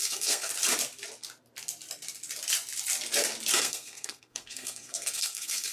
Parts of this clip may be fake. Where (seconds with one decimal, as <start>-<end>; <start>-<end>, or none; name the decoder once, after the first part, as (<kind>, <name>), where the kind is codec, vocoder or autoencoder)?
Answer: 0.0-0.5 (codec, SNAC); 3.6-5.7